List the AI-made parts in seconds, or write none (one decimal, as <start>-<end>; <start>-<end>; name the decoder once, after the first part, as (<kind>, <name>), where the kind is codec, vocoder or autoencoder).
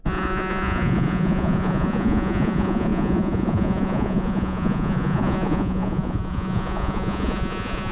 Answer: 0.0-7.9 (vocoder, Vocos)